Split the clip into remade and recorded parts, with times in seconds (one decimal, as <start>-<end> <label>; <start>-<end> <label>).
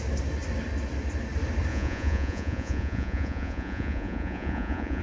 0.0-1.7 recorded; 1.7-5.0 remade